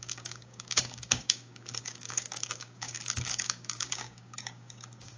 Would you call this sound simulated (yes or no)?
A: yes